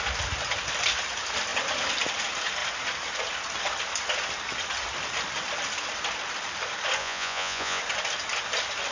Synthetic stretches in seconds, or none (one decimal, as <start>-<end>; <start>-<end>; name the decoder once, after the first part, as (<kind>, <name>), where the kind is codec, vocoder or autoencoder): 7.0-7.8 (vocoder, Vocos)